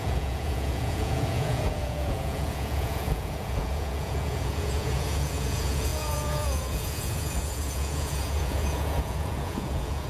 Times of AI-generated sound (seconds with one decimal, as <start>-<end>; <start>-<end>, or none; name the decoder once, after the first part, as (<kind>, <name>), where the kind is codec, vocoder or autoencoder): 0.0-10.1 (vocoder, Vocos)

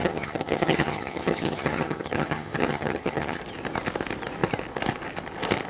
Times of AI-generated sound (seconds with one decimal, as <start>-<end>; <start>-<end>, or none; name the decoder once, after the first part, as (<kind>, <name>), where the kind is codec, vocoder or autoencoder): 0.0-3.4 (vocoder, HiFi-GAN)

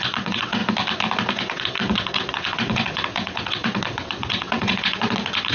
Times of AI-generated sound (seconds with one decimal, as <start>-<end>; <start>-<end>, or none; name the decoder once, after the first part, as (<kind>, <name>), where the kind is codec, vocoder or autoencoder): 0.0-0.6 (vocoder, WaveNeXt); 1.3-5.5

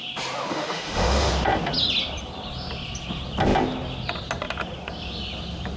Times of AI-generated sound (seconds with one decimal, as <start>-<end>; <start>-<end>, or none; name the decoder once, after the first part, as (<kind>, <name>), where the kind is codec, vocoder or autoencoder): 0.5-1.3 (autoencoder, DAC-VAE)

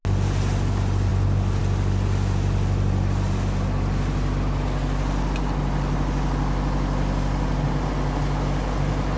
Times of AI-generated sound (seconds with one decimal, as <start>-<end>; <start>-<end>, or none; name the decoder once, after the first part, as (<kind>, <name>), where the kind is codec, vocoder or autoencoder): none